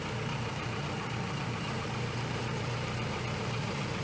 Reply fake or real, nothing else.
fake